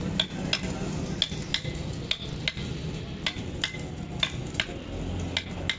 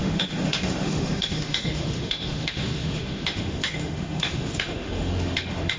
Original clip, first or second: first